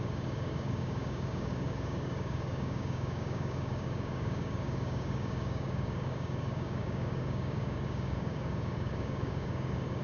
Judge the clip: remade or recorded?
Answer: remade